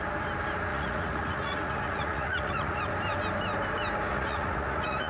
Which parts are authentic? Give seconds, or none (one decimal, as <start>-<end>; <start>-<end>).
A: 0.0-0.7; 2.8-4.1